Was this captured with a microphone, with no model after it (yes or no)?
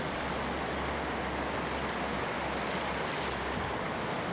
yes